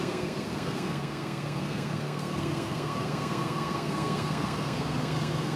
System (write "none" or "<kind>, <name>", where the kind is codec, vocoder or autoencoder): codec, SNAC